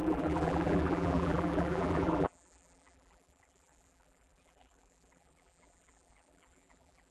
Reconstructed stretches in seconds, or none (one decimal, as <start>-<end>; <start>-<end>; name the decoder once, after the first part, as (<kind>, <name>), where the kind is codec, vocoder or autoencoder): 0.0-7.1 (vocoder, BigVGAN v2)